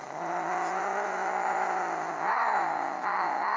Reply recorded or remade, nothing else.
remade